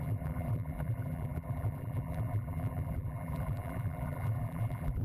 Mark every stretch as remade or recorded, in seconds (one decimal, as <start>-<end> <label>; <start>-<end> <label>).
0.0-5.0 remade